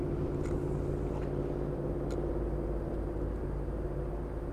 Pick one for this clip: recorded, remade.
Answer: recorded